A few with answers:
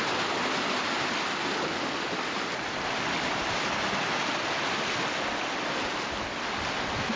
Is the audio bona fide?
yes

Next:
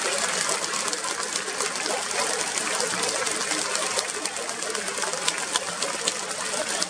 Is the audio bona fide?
yes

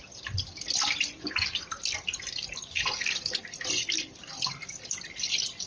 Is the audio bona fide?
yes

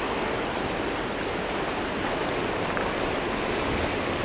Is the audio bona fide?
yes